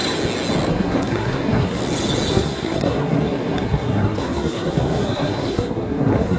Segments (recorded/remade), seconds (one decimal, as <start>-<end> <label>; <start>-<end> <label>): 0.0-0.7 recorded; 0.7-1.8 remade; 1.8-2.3 recorded; 2.3-6.4 remade